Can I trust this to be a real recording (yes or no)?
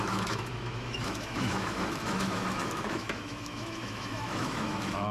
no